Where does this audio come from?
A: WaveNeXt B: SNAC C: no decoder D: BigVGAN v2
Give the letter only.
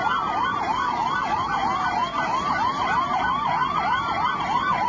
D